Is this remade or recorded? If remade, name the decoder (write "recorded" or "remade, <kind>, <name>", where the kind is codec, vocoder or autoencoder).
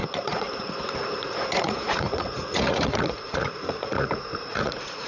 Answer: remade, vocoder, Vocos